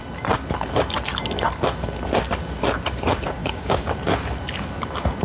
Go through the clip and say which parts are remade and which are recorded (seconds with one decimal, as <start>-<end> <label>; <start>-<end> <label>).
0.0-3.4 recorded; 3.4-3.9 remade; 3.9-5.2 recorded